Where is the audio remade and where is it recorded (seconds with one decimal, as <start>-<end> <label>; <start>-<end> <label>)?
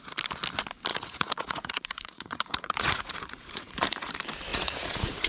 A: 0.0-0.9 recorded; 0.9-4.1 remade; 4.1-4.5 recorded; 4.5-5.3 remade